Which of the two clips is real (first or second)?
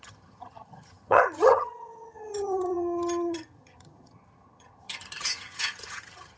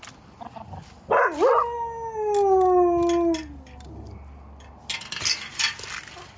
second